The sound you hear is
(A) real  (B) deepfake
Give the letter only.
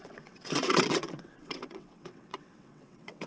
B